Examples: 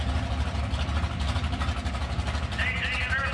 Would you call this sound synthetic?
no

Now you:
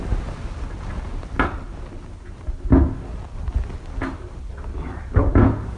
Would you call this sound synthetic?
no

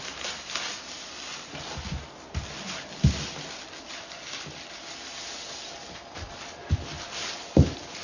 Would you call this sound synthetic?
no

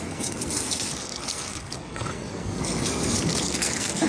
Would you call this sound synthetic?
yes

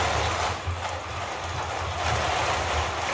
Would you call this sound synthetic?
no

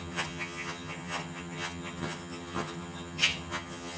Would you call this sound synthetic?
yes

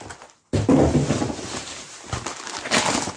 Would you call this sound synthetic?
no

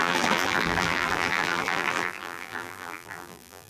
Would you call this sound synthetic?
yes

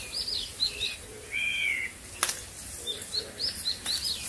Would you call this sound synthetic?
no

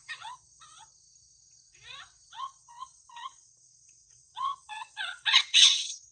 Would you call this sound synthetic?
yes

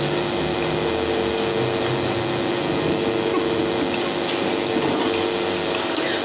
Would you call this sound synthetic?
no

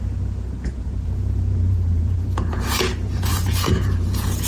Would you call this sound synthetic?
yes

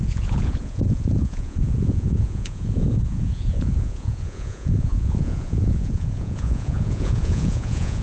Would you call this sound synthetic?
yes